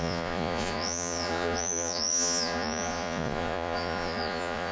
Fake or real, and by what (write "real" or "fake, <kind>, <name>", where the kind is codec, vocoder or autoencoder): fake, vocoder, Vocos